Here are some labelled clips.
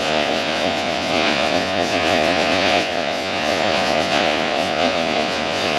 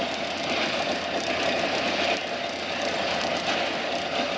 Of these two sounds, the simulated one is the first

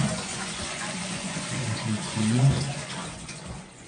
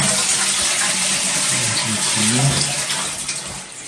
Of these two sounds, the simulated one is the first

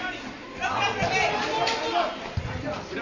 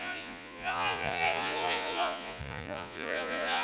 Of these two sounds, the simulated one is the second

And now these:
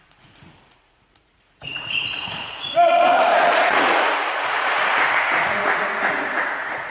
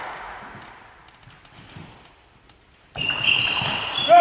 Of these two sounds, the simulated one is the first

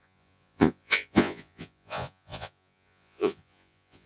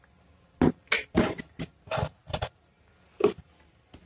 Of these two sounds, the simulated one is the first